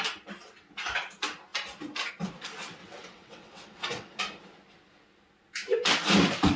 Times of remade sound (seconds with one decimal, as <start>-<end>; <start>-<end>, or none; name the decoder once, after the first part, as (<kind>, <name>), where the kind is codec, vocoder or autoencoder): 2.8-4.2 (vocoder, WaveNeXt)